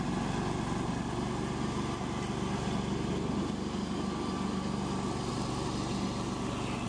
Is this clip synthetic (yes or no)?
no